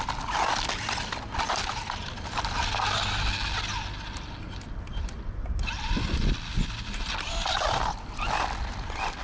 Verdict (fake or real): real